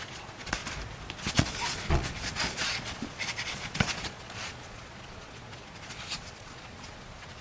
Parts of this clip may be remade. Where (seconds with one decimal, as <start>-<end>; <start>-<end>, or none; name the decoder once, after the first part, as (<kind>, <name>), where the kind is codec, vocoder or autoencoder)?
0.0-0.6 (vocoder, Vocos); 1.3-7.4